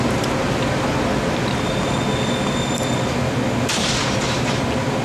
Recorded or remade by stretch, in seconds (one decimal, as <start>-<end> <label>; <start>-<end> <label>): 0.0-5.0 recorded